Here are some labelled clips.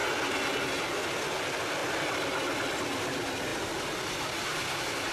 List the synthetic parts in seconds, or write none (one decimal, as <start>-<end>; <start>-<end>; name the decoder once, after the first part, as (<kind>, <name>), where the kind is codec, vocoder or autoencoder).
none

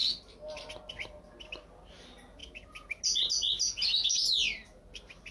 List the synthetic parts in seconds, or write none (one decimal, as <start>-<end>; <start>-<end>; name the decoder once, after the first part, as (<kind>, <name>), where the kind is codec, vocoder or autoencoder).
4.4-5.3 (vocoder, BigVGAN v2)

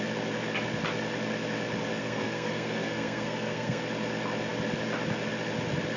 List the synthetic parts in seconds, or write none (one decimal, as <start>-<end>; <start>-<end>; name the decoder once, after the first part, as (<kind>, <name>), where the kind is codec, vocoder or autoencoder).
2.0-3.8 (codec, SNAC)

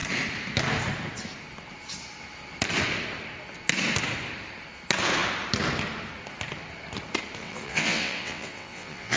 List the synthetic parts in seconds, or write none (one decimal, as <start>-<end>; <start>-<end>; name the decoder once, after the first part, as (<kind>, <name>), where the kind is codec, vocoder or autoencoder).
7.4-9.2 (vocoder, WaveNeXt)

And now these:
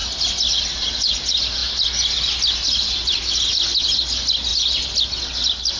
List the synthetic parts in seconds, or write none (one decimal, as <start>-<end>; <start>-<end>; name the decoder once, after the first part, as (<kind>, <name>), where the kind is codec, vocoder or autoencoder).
none

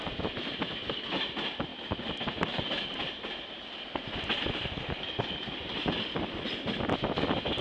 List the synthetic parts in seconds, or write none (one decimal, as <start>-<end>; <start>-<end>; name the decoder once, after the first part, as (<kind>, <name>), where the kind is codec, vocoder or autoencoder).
none